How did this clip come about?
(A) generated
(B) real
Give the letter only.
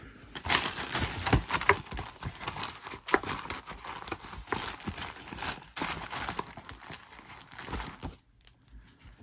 B